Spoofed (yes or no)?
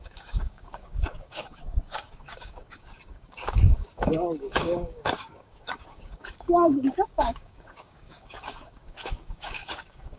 yes